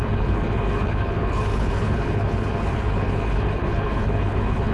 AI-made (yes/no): yes